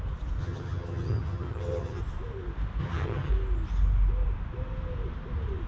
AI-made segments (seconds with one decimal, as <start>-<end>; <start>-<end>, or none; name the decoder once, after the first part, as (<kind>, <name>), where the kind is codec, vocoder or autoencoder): 0.4-2.0 (vocoder, HiFi-GAN); 2.8-3.3